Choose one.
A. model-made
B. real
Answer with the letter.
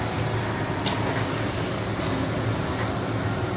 B